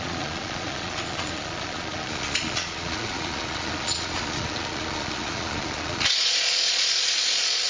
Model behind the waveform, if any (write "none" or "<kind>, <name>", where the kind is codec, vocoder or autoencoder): vocoder, Vocos